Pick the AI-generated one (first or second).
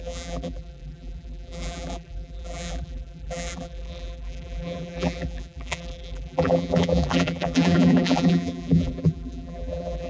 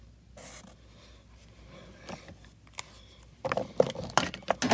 first